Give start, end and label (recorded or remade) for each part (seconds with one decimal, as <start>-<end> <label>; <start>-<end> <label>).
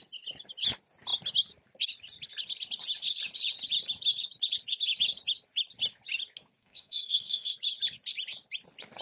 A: 0.0-6.6 recorded; 6.6-7.5 remade; 7.5-9.0 recorded